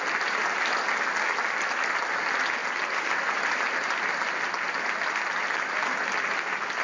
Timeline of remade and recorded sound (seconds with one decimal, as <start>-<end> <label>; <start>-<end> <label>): 0.0-6.8 recorded

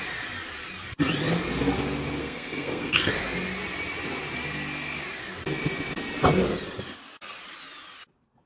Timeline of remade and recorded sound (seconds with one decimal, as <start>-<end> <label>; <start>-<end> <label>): 0.0-2.2 recorded; 2.2-3.1 remade; 3.1-8.5 recorded

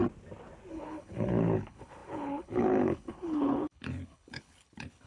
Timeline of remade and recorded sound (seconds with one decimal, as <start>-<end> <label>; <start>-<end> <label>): 0.0-0.7 recorded; 0.7-5.1 remade

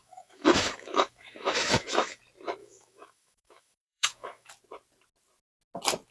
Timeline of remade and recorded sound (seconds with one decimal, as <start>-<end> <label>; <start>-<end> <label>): 0.0-2.2 remade; 2.2-2.6 recorded; 2.6-4.5 remade; 4.5-6.1 recorded